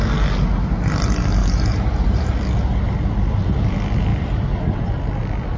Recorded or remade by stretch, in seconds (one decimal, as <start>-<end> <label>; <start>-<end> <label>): 0.0-1.4 recorded; 1.4-2.3 remade; 2.3-4.1 recorded; 4.1-4.6 remade; 4.6-5.6 recorded